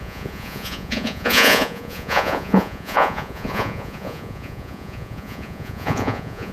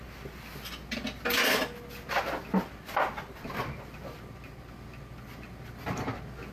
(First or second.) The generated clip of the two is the first